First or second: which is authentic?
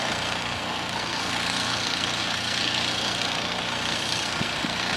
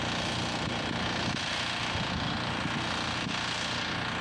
second